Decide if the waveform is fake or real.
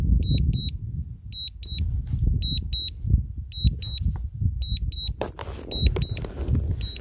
real